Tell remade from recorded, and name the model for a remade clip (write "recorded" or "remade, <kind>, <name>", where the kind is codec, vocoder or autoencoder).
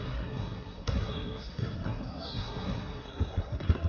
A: remade, codec, SNAC